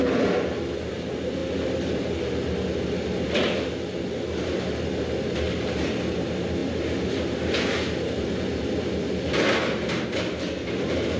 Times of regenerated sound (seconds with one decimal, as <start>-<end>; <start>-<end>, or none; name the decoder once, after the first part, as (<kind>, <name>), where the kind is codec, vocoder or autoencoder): none